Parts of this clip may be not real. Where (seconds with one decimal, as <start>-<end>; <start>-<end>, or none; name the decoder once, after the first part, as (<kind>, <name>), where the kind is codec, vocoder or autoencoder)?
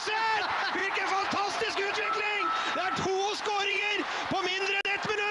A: 0.8-4.0 (vocoder, Vocos)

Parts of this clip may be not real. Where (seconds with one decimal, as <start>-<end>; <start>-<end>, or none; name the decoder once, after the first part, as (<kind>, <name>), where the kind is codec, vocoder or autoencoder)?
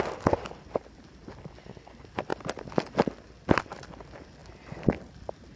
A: none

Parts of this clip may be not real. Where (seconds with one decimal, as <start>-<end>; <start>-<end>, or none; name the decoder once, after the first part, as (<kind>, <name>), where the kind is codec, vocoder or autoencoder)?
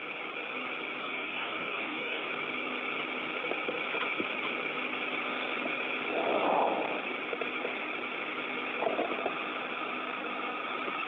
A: 1.0-2.3 (codec, DAC)